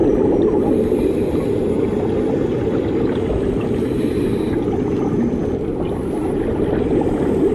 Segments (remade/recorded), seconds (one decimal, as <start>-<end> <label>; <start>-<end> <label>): 0.0-7.5 recorded